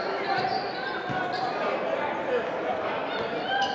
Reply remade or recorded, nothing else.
recorded